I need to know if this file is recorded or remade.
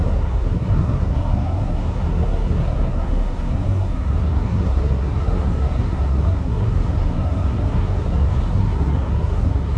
remade